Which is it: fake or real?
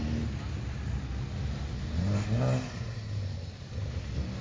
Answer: real